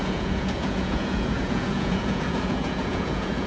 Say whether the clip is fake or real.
fake